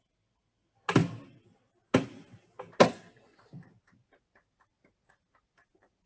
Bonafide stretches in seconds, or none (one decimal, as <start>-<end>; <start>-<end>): 0.0-6.1